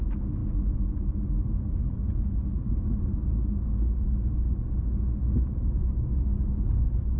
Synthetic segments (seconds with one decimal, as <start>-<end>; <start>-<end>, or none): none